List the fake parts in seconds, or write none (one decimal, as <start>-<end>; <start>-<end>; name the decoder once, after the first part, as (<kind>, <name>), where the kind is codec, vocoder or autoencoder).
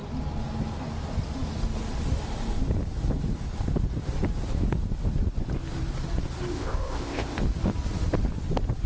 6.5-7.4 (codec, ZipCodec)